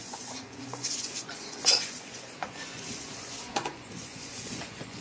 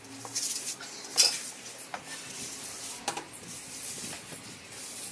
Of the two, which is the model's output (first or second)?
first